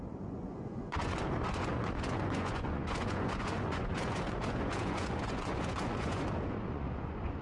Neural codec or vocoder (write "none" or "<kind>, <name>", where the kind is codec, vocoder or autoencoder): vocoder, Vocos